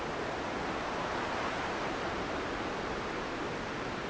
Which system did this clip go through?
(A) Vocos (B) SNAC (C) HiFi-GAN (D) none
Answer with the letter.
D